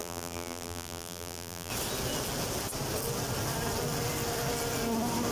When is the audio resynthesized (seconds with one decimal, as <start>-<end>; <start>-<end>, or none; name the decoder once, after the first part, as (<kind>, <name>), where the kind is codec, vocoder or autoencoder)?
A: 0.0-1.7 (vocoder, BigVGAN v2)